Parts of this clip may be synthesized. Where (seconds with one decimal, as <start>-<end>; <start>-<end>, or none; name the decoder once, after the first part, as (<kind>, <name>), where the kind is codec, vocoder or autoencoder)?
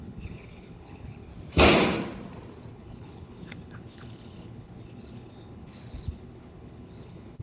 0.0-1.3 (codec, HILCodec); 2.7-7.4